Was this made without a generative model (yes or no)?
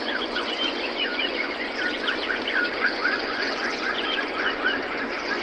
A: no